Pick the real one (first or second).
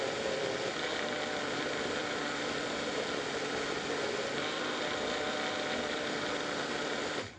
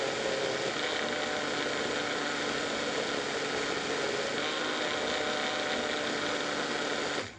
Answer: second